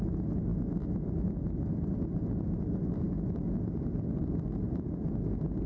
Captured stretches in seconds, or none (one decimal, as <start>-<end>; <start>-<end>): 0.0-5.7